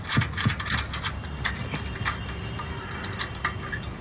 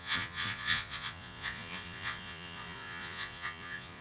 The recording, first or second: first